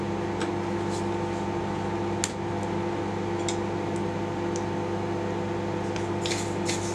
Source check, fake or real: real